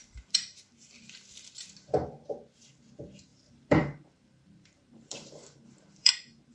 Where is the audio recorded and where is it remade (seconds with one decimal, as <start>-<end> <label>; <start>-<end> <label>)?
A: 0.0-3.3 recorded; 3.3-6.1 remade; 6.1-6.5 recorded